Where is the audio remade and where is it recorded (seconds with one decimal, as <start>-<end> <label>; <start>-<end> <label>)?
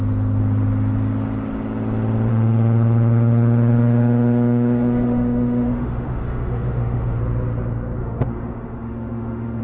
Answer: 0.0-2.3 recorded; 2.3-7.2 remade; 7.2-8.0 recorded; 8.0-9.6 remade